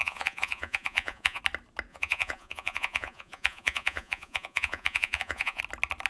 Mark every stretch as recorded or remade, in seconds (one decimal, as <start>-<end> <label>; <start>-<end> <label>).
0.0-1.4 remade; 1.4-1.9 recorded; 1.9-5.6 remade; 5.6-6.1 recorded